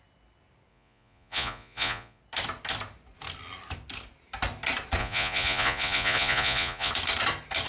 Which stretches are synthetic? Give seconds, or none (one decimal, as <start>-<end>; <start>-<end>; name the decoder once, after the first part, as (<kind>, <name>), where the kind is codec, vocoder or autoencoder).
0.7-2.2 (vocoder, Vocos); 5.0-6.9